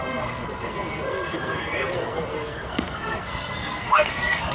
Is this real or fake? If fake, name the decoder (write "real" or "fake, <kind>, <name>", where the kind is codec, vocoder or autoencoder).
fake, codec, SNAC